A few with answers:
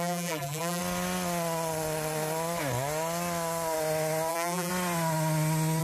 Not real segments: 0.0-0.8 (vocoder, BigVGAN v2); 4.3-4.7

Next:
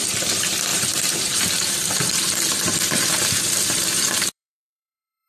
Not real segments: 0.0-5.3 (vocoder, BigVGAN v2)

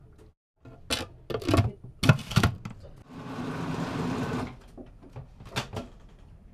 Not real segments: none